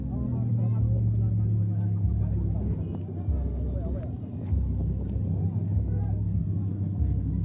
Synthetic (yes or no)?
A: no